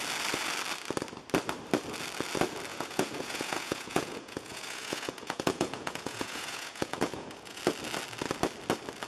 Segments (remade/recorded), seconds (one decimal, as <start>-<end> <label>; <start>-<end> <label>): 0.0-2.7 recorded; 2.7-7.6 remade; 7.6-9.1 recorded